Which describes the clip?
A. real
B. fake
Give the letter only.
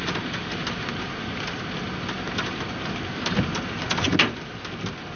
A